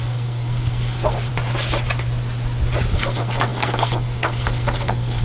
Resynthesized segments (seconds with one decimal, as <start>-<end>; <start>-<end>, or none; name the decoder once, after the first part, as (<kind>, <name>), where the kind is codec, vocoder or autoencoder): 0.0-1.3 (codec, SNAC); 2.9-5.2